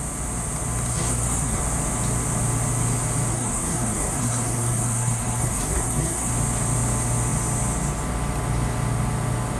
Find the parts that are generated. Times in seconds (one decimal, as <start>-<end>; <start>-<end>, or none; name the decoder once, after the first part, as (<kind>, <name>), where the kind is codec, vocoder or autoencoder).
0.9-1.6 (codec, SNAC); 3.3-6.3